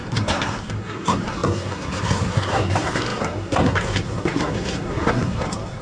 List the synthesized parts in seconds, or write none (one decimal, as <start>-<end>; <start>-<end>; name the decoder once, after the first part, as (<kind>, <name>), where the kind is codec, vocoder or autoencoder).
0.0-5.8 (codec, SNAC)